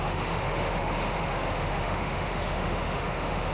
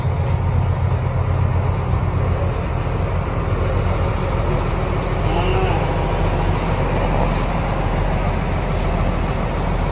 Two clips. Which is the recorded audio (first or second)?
second